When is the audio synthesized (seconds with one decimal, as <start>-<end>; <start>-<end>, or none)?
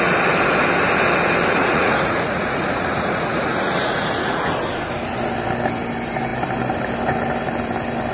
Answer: 1.6-4.5